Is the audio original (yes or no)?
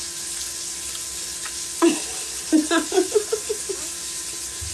yes